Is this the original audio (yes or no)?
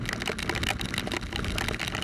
yes